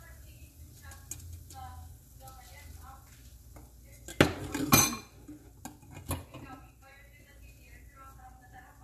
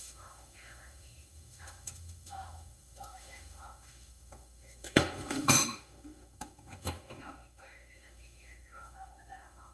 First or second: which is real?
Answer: first